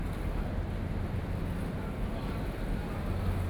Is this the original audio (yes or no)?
yes